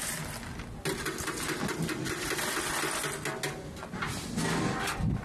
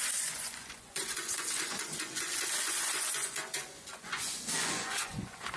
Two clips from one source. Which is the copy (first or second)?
second